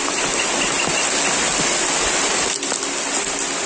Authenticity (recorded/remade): recorded